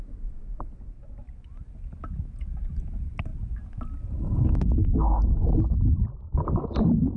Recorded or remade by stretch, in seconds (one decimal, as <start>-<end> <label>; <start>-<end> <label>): 0.0-7.2 recorded